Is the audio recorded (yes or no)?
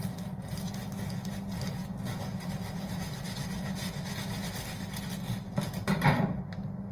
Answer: yes